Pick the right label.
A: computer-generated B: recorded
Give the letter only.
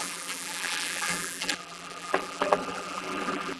A